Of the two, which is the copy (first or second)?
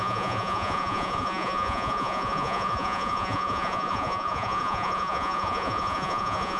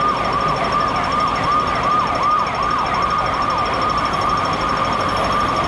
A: first